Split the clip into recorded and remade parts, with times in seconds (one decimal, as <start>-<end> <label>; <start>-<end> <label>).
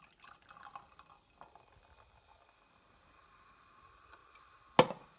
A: 0.0-5.2 recorded